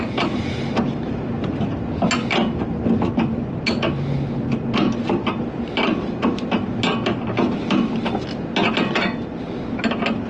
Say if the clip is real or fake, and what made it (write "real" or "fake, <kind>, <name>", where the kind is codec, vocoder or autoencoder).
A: real